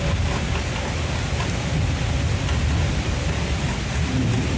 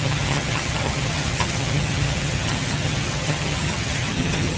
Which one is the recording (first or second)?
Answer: first